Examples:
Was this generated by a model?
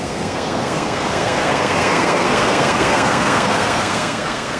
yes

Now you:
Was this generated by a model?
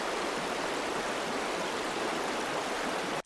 no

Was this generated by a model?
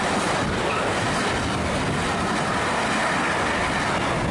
no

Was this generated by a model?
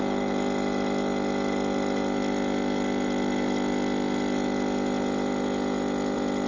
no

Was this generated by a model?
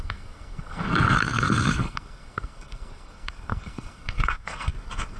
yes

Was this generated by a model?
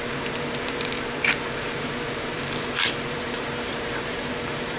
yes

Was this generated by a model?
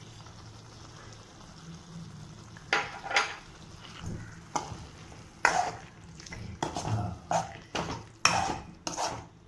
no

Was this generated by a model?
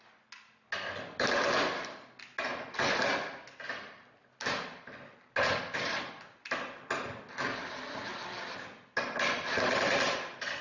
no